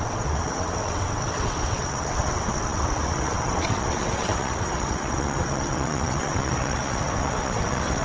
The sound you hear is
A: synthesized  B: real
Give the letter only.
A